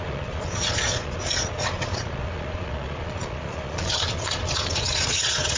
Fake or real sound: fake